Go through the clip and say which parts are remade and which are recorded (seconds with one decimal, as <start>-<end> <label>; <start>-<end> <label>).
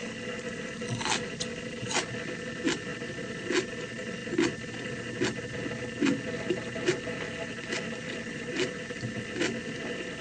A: 0.0-10.2 recorded